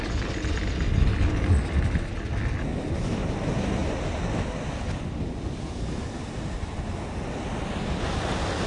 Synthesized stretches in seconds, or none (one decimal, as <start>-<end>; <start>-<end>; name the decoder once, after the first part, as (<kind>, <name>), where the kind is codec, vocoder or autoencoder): none